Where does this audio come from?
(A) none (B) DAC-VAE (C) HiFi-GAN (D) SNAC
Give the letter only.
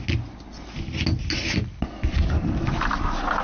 A